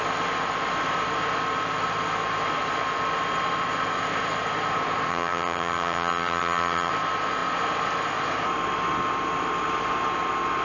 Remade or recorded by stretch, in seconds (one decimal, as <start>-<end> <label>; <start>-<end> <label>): 0.0-5.1 recorded; 5.1-6.9 remade; 6.9-10.6 recorded